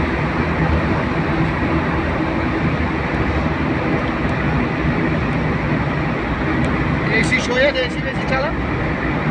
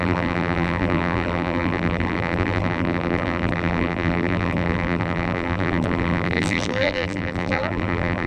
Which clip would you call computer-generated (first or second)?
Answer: second